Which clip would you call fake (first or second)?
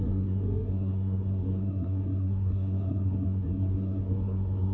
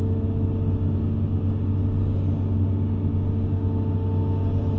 first